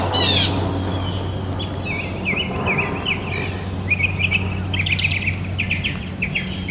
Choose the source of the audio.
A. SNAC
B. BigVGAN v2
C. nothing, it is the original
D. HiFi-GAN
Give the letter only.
C